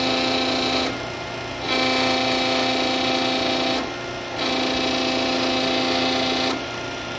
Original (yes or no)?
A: yes